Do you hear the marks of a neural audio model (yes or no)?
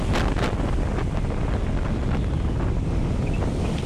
no